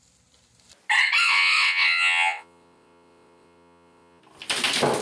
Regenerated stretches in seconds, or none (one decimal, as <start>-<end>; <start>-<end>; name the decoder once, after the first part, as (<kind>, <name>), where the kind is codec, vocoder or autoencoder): 1.2-4.2 (vocoder, WaveNeXt)